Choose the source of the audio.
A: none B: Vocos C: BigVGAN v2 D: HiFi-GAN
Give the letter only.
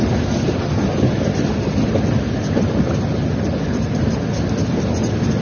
A